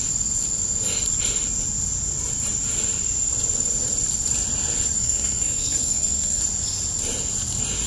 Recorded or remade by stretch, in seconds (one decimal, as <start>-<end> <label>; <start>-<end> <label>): 0.0-5.0 recorded; 5.0-6.4 remade; 6.4-7.9 recorded

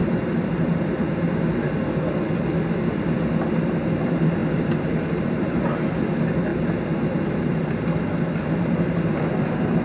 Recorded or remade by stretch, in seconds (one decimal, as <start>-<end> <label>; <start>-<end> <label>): 0.0-9.8 recorded